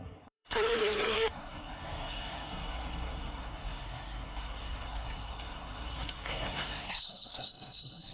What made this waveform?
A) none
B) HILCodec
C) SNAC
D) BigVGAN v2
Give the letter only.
C